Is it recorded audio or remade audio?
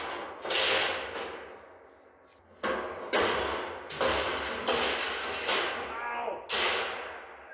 recorded